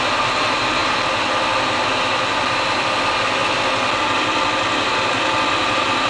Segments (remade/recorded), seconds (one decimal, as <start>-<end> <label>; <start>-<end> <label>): 0.0-6.1 recorded

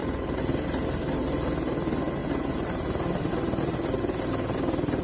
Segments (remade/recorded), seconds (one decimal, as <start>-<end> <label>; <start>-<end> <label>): 0.0-1.0 remade; 1.0-2.2 recorded; 2.2-3.3 remade; 3.3-3.7 recorded; 3.7-4.6 remade; 4.6-5.0 recorded

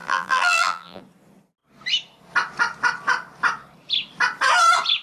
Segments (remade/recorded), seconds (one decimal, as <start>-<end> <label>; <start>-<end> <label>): 0.0-1.0 remade; 1.0-5.0 recorded

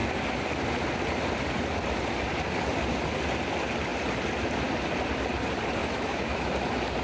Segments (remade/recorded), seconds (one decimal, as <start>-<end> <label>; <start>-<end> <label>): 0.0-5.8 recorded; 5.8-6.5 remade; 6.5-7.0 recorded

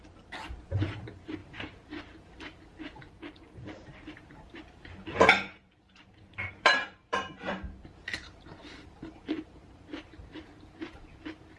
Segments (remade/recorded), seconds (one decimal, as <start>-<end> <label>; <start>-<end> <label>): 0.0-11.6 remade

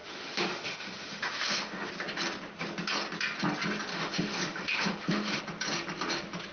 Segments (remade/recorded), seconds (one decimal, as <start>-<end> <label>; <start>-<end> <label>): 0.0-1.9 remade; 1.9-3.9 recorded; 3.9-5.4 remade; 5.4-6.5 recorded